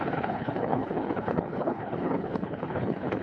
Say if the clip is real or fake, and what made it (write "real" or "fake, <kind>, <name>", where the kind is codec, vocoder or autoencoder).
fake, codec, HILCodec